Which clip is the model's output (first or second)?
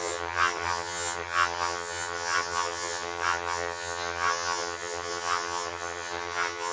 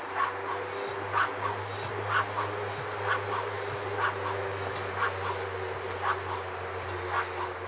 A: first